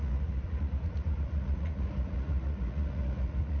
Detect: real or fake fake